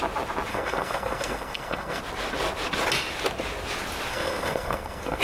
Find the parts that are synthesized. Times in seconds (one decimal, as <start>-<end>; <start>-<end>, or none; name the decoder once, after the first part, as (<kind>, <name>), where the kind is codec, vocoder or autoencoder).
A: 0.5-2.0 (codec, SNAC); 4.1-5.2